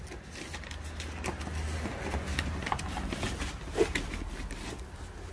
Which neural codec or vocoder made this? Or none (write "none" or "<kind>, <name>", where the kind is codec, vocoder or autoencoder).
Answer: none